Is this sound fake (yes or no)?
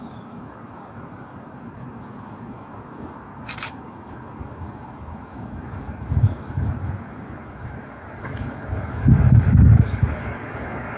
yes